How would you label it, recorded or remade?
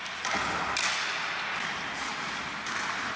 recorded